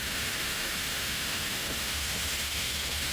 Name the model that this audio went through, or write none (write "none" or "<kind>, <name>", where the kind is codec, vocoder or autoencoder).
autoencoder, DAC-VAE